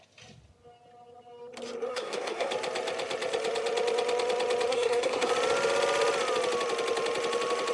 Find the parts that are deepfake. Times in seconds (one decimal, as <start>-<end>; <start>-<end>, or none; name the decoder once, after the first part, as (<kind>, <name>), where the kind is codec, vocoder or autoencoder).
1.9-2.5 (codec, SNAC); 4.7-5.3